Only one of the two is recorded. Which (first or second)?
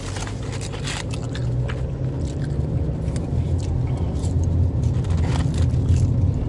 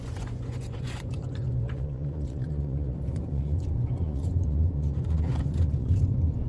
first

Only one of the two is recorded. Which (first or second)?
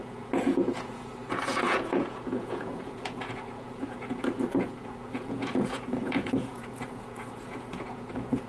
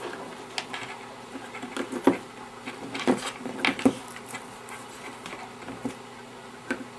second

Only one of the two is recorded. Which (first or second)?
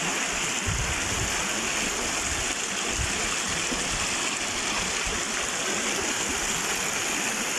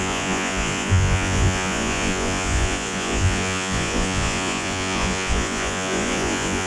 first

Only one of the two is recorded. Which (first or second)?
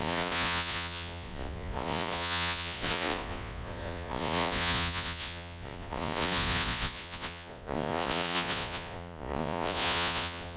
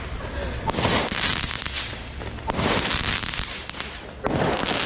second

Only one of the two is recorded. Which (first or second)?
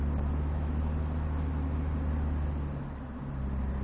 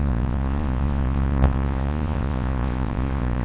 first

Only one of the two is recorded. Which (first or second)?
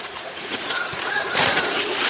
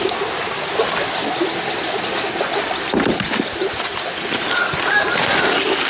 second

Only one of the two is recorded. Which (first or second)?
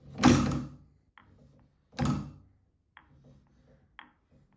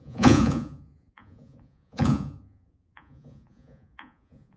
first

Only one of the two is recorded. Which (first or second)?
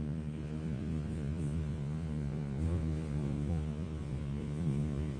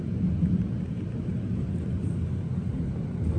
second